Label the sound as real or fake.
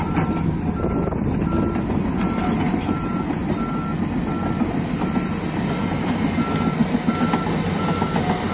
real